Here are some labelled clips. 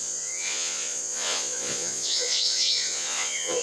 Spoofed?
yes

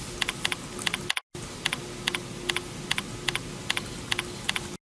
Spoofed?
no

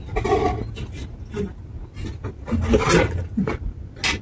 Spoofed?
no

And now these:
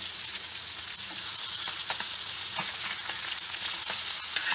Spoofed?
yes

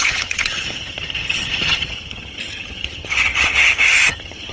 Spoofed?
yes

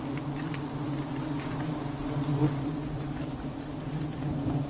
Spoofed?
no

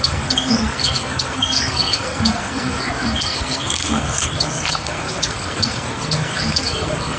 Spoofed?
yes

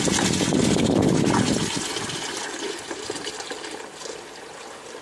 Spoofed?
no